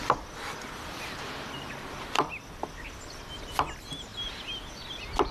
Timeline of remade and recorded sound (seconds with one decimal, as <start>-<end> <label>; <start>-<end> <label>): 0.0-5.3 recorded